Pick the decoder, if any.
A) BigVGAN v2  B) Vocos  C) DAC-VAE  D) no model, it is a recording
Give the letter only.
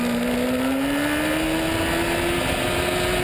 D